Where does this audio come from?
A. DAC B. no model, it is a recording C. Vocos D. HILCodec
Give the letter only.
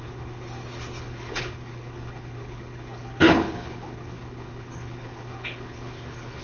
D